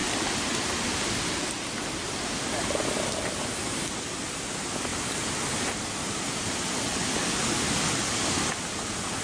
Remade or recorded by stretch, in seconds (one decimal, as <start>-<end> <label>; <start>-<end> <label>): 0.0-9.2 recorded